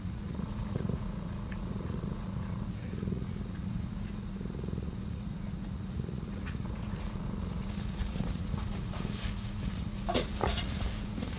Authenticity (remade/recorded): remade